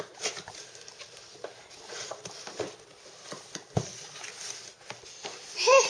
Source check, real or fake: real